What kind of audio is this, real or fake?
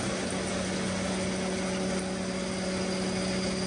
real